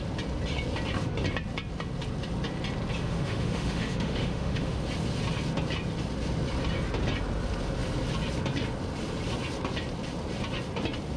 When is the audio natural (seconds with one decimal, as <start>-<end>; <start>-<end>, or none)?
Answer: 0.0-3.0; 4.8-11.2